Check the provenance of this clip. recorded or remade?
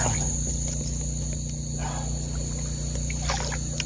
recorded